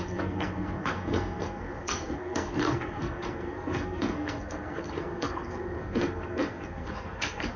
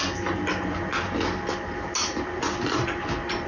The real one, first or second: second